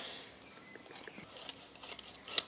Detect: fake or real real